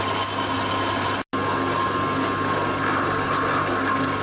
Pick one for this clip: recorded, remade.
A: recorded